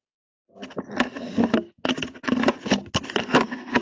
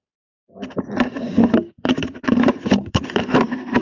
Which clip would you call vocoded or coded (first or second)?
second